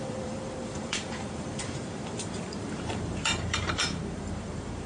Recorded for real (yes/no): no